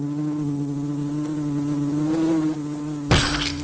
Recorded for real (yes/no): yes